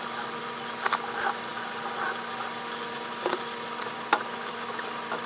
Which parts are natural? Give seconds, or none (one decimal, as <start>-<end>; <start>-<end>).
0.0-5.3